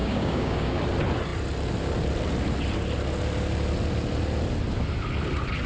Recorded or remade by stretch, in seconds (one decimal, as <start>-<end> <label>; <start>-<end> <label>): 0.0-0.8 remade; 0.8-5.7 recorded